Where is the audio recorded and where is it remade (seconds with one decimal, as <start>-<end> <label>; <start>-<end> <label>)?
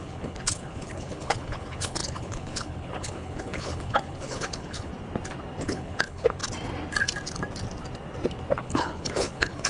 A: 0.0-4.9 remade; 4.9-5.6 recorded; 5.6-6.4 remade; 6.4-8.6 recorded; 8.6-9.7 remade